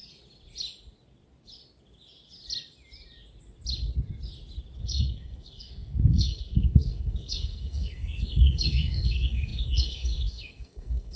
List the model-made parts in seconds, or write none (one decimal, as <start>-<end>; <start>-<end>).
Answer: 4.8-11.2